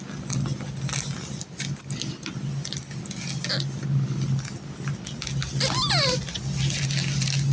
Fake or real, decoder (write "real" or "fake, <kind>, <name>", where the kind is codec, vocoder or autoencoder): real